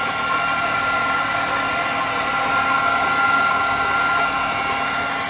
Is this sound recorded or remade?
recorded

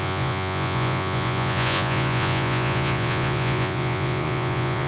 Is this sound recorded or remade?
remade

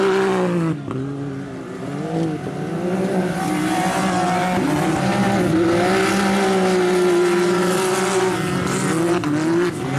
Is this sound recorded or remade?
recorded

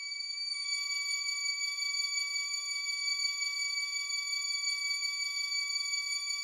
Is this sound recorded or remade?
remade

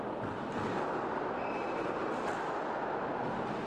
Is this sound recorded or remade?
recorded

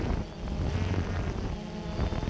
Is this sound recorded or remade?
recorded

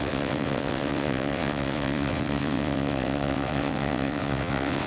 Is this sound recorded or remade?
remade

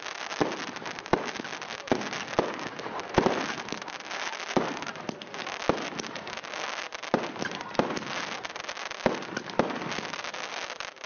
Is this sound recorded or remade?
recorded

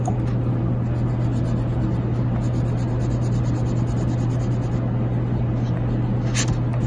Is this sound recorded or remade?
recorded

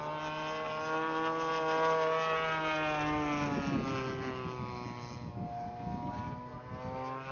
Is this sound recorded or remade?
recorded